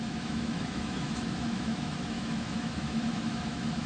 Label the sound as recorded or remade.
remade